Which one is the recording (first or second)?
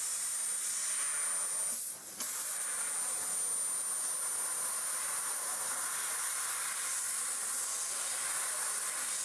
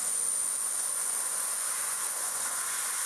first